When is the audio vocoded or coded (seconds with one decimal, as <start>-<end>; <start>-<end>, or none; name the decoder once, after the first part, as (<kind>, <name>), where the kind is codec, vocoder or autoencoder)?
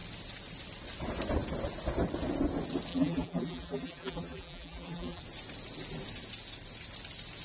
2.9-5.2 (vocoder, BigVGAN v2)